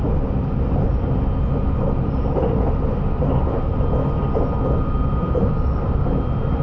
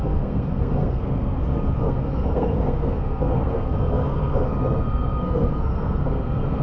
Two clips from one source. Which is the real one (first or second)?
first